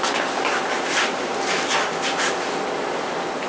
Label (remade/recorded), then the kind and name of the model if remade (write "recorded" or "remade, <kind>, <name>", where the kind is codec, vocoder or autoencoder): recorded